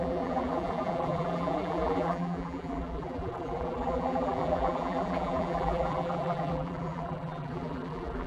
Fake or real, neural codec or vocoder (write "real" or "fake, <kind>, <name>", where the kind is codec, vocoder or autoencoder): fake, vocoder, BigVGAN v2